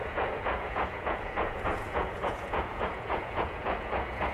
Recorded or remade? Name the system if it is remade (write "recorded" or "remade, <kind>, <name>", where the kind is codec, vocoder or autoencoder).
remade, vocoder, Vocos